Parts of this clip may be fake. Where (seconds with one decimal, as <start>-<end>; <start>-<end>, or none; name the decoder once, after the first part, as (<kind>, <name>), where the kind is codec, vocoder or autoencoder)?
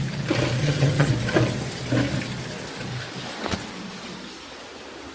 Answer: 0.6-1.1 (vocoder, HiFi-GAN)